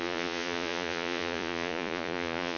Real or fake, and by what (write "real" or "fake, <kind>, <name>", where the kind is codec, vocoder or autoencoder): fake, vocoder, Vocos